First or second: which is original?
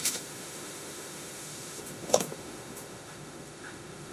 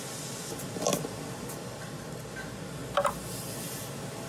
second